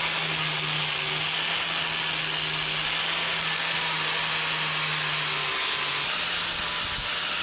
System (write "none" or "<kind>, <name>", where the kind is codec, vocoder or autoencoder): none